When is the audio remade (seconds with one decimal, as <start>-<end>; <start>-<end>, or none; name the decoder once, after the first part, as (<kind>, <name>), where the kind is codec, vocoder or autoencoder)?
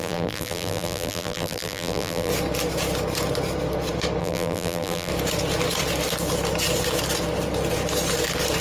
0.0-2.3 (vocoder, BigVGAN v2); 4.2-5.1